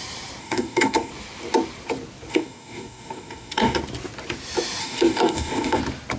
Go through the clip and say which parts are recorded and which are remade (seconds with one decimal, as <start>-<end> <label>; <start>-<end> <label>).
0.0-0.4 recorded; 0.4-1.1 remade; 1.1-2.3 recorded; 2.3-3.8 remade; 3.8-4.8 recorded; 4.8-5.8 remade; 5.8-6.2 recorded